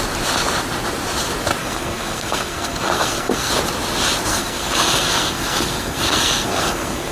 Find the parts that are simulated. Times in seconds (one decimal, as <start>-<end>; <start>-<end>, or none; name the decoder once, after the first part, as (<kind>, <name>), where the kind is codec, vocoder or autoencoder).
1.6-3.5 (codec, SNAC); 4.3-7.1